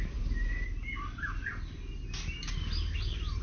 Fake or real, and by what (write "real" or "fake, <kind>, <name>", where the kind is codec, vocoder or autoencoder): real